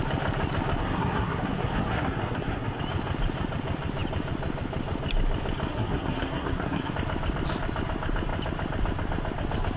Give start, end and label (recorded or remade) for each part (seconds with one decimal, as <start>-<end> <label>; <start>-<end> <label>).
0.0-0.8 recorded; 0.8-2.8 remade; 2.8-5.7 recorded; 5.7-6.9 remade; 6.9-9.8 recorded